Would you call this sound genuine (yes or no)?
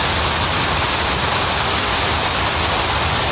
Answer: yes